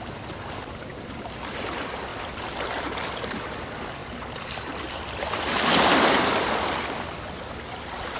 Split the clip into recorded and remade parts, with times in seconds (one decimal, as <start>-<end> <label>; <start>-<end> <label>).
0.0-0.9 remade; 0.9-1.7 recorded; 1.7-2.1 remade; 2.1-2.8 recorded; 2.8-4.0 remade; 4.0-8.2 recorded